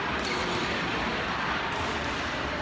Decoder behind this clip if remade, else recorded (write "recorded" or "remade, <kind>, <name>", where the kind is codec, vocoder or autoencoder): recorded